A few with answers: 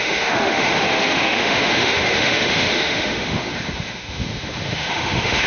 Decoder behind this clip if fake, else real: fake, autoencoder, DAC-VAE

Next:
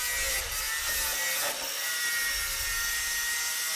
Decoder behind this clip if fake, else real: real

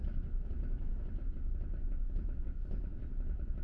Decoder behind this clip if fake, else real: real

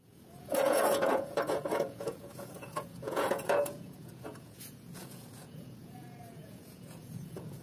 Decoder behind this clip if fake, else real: fake, vocoder, Vocos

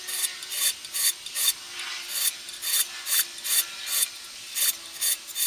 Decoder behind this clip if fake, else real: real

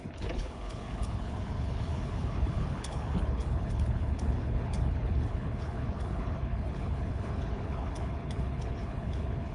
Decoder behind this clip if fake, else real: fake, codec, HILCodec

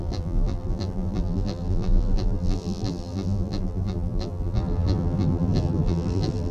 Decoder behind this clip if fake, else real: fake, vocoder, BigVGAN v2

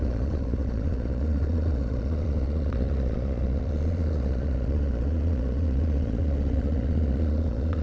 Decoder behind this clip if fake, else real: fake, vocoder, Vocos